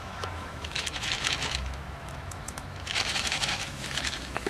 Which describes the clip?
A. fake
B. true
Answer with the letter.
A